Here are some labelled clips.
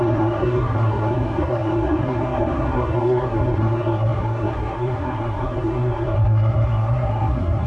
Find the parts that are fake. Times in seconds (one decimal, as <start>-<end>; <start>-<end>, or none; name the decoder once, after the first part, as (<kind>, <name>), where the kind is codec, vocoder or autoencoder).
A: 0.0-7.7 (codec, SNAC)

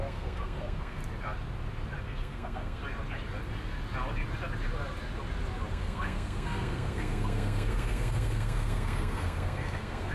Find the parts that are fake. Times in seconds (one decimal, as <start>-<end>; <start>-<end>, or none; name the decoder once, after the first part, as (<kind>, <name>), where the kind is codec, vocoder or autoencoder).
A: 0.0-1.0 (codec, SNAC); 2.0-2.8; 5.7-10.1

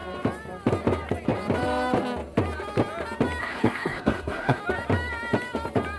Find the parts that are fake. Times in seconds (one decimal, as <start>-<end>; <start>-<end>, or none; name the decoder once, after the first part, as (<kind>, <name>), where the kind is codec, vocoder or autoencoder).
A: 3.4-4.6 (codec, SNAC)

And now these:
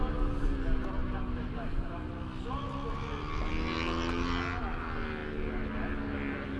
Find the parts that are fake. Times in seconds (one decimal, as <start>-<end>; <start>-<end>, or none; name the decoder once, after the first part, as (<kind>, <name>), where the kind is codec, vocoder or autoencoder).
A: none

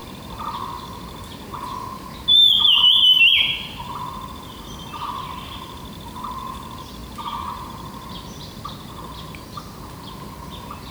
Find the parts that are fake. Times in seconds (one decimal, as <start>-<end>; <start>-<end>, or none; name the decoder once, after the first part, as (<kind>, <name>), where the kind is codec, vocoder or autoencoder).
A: none